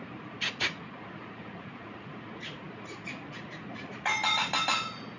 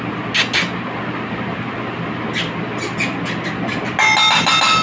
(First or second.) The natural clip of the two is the second